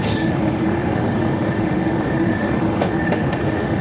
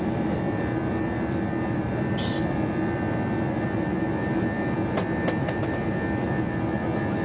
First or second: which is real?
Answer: second